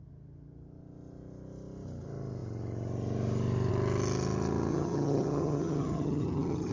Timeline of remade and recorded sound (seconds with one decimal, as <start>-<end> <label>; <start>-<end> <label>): 0.0-4.7 recorded; 4.7-6.7 remade